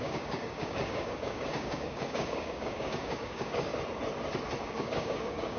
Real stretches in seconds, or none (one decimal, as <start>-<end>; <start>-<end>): 3.7-4.6